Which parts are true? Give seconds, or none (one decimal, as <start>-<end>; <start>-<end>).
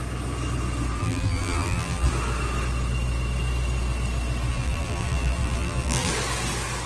0.0-1.0; 2.1-4.5; 6.1-6.9